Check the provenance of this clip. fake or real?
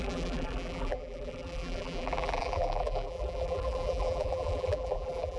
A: fake